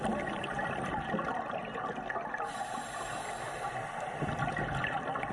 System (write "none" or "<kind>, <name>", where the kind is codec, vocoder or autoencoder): none